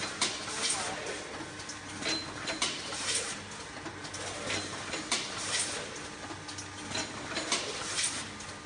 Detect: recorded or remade recorded